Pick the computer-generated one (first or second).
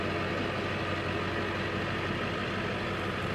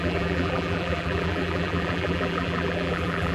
second